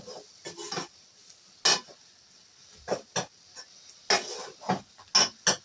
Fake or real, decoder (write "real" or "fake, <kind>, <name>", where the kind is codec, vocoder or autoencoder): real